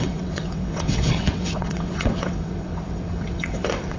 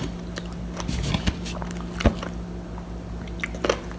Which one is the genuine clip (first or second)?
second